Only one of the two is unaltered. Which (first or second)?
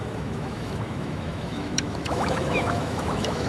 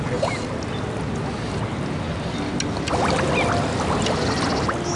second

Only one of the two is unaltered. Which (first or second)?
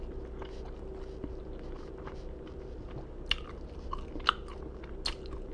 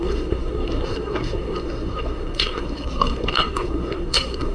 first